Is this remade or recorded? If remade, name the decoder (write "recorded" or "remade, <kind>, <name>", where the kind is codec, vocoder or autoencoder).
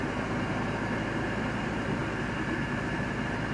remade, vocoder, BigVGAN v2